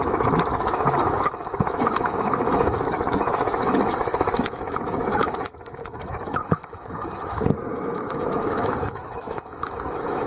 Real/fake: fake